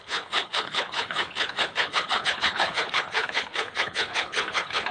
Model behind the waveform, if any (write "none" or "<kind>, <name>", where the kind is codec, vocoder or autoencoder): codec, HILCodec